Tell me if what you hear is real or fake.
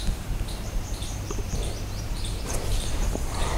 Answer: fake